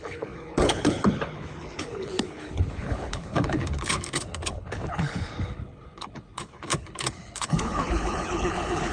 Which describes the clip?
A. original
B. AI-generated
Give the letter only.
B